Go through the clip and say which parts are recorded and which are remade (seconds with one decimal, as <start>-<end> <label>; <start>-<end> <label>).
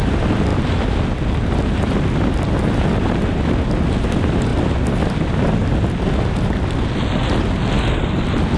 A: 0.0-8.6 recorded